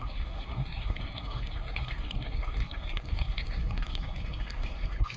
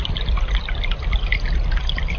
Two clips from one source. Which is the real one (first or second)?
second